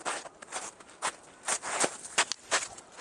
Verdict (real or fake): real